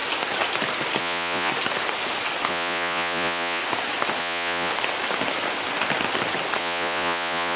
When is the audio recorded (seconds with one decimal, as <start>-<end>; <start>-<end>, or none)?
0.0-1.0; 1.5-2.5; 3.6-4.2; 4.7-6.6